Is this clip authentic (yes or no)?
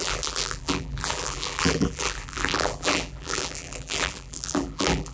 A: no